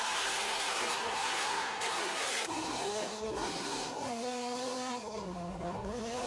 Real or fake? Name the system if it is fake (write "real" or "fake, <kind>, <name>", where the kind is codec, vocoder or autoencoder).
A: fake, codec, SNAC